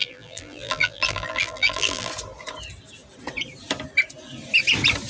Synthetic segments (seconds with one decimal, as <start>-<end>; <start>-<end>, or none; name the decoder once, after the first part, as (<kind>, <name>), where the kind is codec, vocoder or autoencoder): 0.0-2.1 (vocoder, BigVGAN v2)

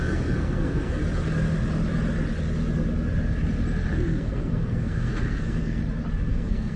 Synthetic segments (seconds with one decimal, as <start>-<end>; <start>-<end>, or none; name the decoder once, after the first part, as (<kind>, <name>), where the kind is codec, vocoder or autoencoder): 0.0-1.0 (codec, SNAC); 3.9-5.8; 6.3-6.8

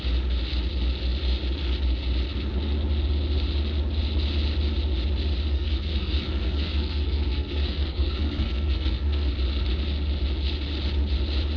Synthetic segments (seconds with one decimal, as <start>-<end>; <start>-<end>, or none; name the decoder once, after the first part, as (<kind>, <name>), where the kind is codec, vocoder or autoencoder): 5.5-9.3 (codec, SNAC)

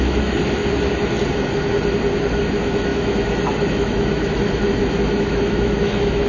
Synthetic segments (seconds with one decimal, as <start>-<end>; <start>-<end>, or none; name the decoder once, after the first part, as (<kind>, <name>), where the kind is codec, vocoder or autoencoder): 0.0-0.6 (autoencoder, DAC-VAE); 2.4-6.3

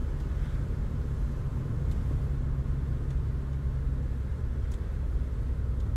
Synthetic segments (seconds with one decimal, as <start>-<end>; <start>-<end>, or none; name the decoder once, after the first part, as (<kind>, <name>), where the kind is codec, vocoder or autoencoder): 0.0-2.2 (vocoder, BigVGAN v2); 4.3-5.2